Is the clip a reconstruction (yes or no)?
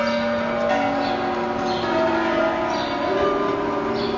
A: no